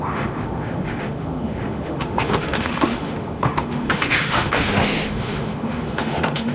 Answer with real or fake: fake